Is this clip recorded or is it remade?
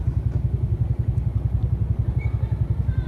recorded